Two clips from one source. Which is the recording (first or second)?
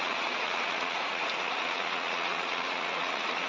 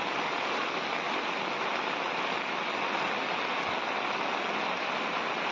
second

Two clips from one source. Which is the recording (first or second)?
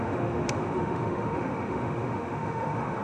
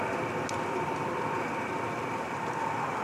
second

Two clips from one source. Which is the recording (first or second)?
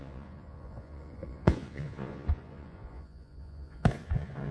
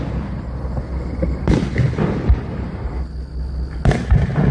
second